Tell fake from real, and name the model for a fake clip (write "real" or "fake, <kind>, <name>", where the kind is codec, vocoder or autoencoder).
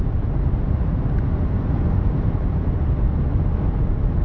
real